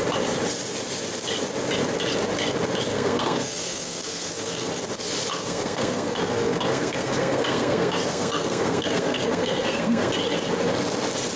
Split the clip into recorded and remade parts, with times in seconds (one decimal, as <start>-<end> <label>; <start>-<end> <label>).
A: 0.0-2.9 recorded; 2.9-4.7 remade; 4.7-5.3 recorded; 5.3-10.1 remade; 10.1-11.4 recorded